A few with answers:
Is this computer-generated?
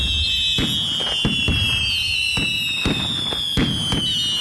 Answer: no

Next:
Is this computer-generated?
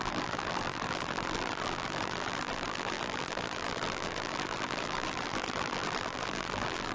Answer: yes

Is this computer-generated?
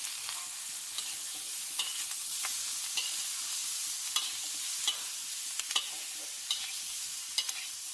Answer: no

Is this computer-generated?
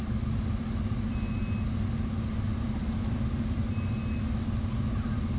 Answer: no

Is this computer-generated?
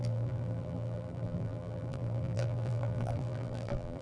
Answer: yes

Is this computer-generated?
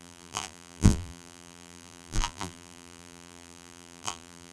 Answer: yes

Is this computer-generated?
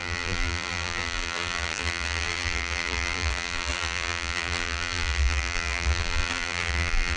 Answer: yes